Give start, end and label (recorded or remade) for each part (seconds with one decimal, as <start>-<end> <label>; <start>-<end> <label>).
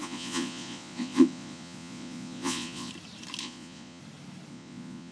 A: 0.0-2.9 remade; 2.9-3.4 recorded; 3.4-4.0 remade; 4.0-4.5 recorded; 4.5-5.1 remade